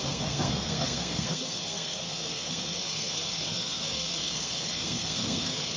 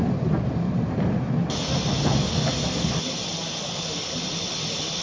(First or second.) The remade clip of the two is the first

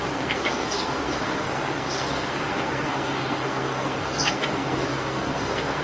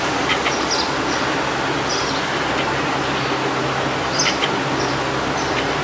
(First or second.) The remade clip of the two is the first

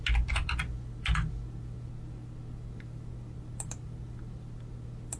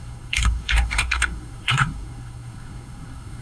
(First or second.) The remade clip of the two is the second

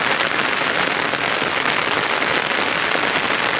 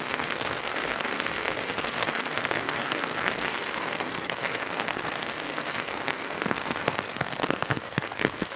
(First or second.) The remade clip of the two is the second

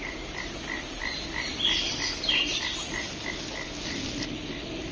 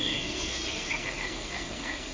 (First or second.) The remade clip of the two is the second